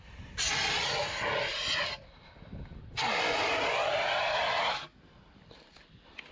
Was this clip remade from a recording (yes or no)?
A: no